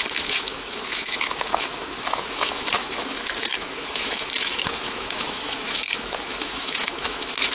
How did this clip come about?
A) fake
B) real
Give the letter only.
A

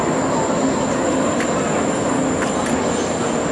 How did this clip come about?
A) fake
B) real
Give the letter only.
B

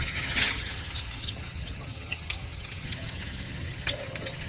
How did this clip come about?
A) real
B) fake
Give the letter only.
B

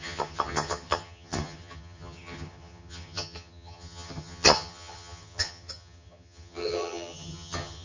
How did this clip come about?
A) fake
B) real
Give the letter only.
A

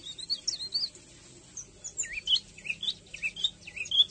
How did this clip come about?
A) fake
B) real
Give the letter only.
B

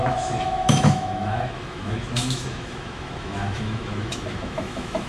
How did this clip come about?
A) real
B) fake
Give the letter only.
B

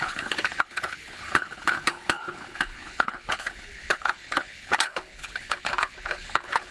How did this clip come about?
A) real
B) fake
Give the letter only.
B